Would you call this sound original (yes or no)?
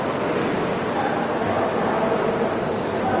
yes